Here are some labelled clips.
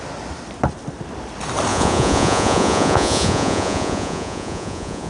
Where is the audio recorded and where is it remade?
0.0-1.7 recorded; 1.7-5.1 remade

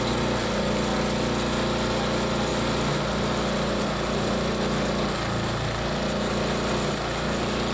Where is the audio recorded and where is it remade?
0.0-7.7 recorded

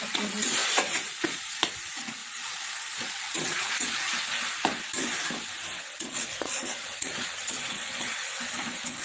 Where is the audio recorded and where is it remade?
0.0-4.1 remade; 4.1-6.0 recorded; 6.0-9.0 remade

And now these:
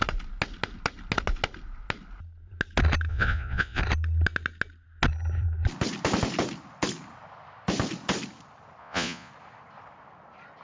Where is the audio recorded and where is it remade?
0.0-3.1 recorded; 3.1-3.8 remade; 3.8-8.8 recorded; 8.8-9.3 remade; 9.3-10.6 recorded